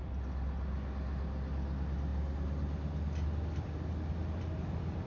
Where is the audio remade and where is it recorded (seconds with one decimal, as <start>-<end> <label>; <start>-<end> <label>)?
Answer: 0.0-5.1 recorded